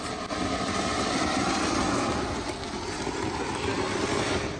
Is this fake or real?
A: fake